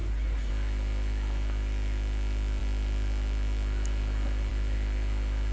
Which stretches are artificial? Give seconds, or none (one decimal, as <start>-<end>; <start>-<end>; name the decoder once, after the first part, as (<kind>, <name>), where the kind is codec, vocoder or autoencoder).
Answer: 0.0-0.5 (codec, SNAC)